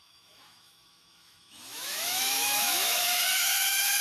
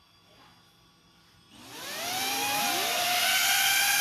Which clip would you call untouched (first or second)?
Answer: second